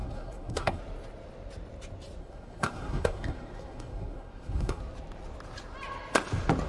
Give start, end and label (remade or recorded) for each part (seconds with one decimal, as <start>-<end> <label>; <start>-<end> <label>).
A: 0.0-0.8 remade; 0.8-2.2 recorded; 2.2-4.8 remade; 4.8-6.7 recorded